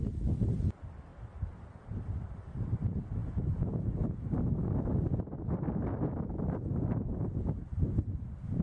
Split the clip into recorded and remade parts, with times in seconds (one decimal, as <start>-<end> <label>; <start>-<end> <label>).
0.0-8.6 recorded